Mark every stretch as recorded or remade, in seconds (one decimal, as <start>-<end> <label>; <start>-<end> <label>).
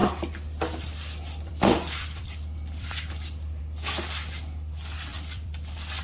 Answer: 0.0-3.6 remade; 3.6-5.1 recorded; 5.1-6.0 remade